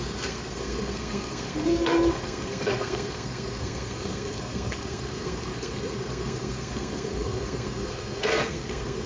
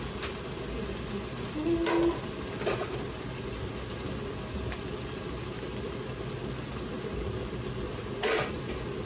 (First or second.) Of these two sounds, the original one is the second